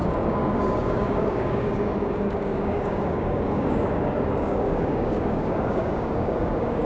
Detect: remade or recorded remade